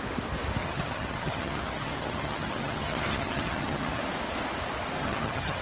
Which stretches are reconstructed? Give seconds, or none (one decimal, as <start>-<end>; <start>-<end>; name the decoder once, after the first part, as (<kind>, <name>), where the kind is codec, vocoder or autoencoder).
0.6-4.0 (vocoder, HiFi-GAN); 5.0-5.6